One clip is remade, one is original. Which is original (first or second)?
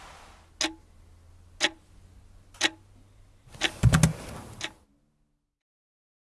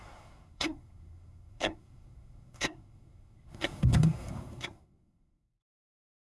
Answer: first